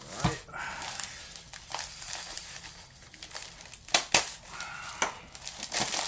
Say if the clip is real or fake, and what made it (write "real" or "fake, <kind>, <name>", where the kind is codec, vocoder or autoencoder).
real